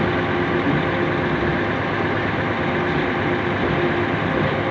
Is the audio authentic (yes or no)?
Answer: yes